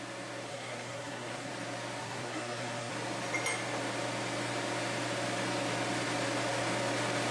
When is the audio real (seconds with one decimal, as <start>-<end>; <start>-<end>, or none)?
0.0-0.5; 1.5-2.0; 2.9-7.3